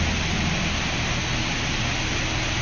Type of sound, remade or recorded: recorded